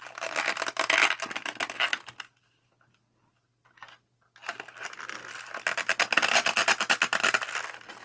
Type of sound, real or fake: real